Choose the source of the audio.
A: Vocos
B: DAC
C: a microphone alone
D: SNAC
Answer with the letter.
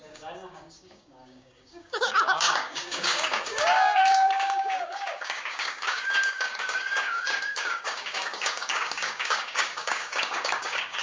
B